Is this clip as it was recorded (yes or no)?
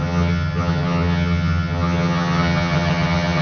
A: no